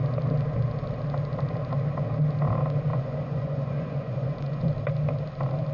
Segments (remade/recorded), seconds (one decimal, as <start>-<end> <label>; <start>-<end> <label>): 0.0-2.9 recorded; 2.9-4.7 remade; 4.7-5.7 recorded